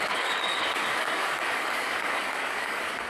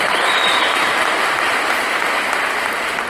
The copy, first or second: first